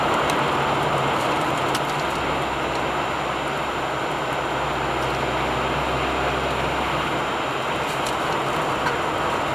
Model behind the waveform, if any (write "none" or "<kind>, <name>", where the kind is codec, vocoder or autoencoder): none